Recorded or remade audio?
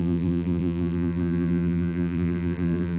remade